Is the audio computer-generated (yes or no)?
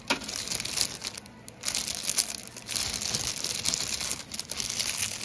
no